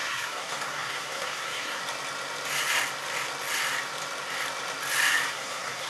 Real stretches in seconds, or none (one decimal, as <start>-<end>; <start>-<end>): 1.8-5.3